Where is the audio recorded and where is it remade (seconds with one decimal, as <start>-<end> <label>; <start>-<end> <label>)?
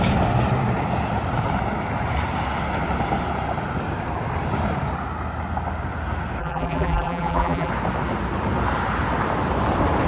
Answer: 0.0-6.4 recorded; 6.4-7.7 remade; 7.7-10.1 recorded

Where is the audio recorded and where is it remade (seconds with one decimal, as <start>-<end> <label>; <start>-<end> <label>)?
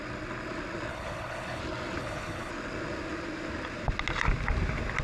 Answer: 0.0-0.9 recorded; 0.9-1.6 remade; 1.6-2.0 recorded; 2.0-2.5 remade; 2.5-5.0 recorded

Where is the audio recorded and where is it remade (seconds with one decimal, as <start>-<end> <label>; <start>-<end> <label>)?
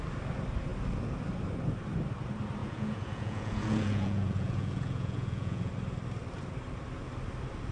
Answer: 0.0-2.6 recorded; 2.6-5.7 remade; 5.7-7.7 recorded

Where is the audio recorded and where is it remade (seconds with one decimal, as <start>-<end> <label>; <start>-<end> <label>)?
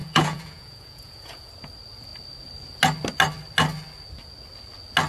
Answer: 0.0-1.5 remade; 1.5-5.1 recorded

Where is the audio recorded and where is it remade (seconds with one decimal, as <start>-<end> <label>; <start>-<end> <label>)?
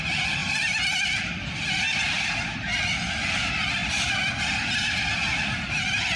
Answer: 0.0-3.8 remade; 3.8-4.4 recorded; 4.4-6.2 remade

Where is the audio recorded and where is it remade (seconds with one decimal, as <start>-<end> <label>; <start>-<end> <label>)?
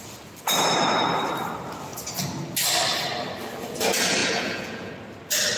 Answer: 0.0-4.2 recorded; 4.2-4.9 remade; 4.9-5.6 recorded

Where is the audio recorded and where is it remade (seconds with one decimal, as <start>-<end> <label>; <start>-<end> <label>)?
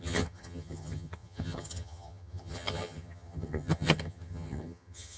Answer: 0.0-5.2 remade